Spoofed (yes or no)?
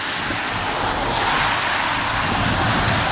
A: no